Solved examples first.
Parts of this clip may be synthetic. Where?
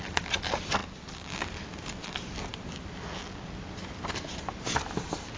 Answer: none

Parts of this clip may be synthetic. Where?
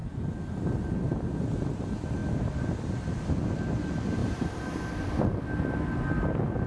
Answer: 2.2-3.3 (vocoder, BigVGAN v2); 4.2-5.4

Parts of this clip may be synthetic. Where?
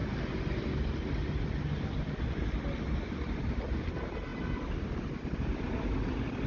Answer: none